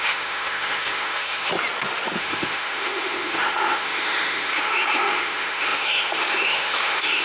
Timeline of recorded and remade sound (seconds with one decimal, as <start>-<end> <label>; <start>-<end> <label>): 0.0-1.5 remade; 1.5-2.2 recorded; 2.2-7.2 remade